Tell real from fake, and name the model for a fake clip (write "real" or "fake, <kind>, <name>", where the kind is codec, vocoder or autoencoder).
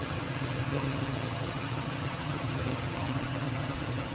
fake, vocoder, HiFi-GAN